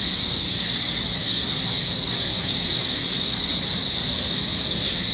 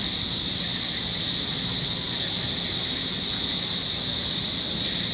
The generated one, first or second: first